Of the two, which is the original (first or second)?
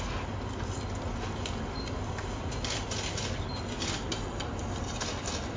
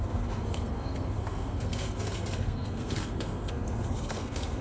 first